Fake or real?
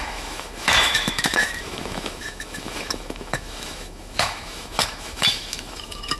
fake